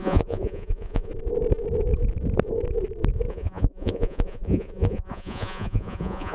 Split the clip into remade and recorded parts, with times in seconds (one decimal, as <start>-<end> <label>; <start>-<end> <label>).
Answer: 0.0-1.1 remade; 1.1-3.3 recorded; 3.3-6.3 remade